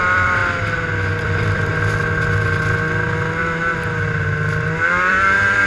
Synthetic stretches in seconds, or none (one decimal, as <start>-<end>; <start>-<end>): 0.0-0.4; 1.2-1.7; 5.1-5.7